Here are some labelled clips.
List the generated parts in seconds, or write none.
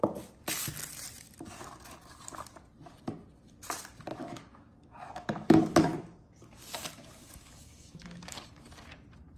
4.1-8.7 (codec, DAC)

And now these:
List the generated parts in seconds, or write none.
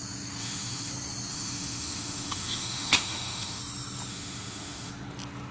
0.4-0.9 (autoencoder, DAC-VAE); 1.3-3.6; 4.1-4.9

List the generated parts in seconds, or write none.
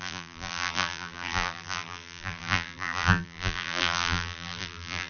0.0-5.1 (vocoder, BigVGAN v2)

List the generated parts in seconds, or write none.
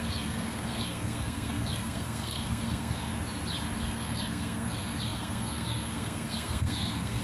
0.0-3.1 (codec, SNAC); 3.8-7.2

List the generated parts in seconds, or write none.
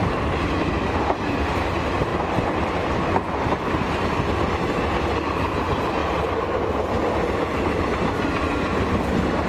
none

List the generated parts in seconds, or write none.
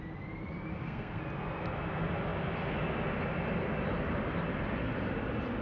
0.7-1.2 (codec, SNAC)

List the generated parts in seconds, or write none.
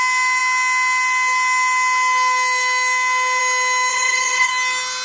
3.9-4.5 (codec, HILCodec)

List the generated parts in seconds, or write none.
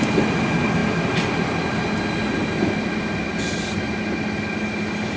none